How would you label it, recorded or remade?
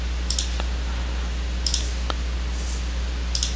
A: recorded